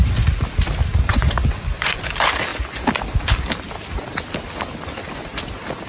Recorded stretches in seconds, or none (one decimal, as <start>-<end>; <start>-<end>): 0.0-1.1; 2.1-5.9